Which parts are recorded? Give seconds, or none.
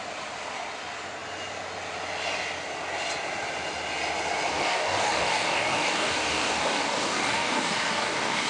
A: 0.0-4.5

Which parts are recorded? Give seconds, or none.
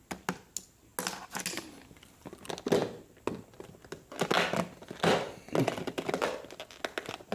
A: 0.0-7.3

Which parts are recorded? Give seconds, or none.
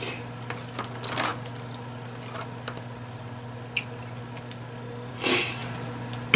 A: 0.0-6.4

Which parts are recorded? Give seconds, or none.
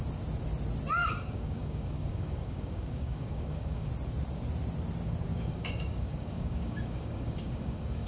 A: 0.0-1.0; 3.9-5.3